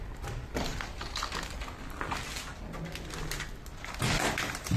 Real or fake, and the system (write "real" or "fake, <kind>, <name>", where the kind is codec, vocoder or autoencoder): real